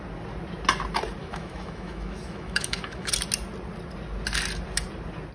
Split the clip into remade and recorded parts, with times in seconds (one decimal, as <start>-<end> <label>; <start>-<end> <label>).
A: 0.0-1.2 recorded; 1.2-3.1 remade; 3.1-5.3 recorded

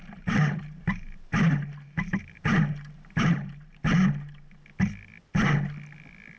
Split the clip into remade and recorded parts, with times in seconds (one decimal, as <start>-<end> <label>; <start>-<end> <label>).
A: 0.0-3.8 remade; 3.8-6.4 recorded

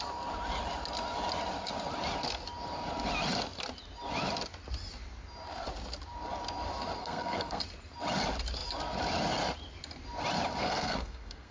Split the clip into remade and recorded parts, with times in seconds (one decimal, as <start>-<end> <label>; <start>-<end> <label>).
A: 0.0-7.0 recorded; 7.0-7.6 remade; 7.6-10.6 recorded; 10.6-11.5 remade